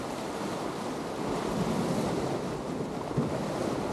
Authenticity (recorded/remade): recorded